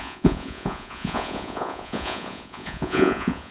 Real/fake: fake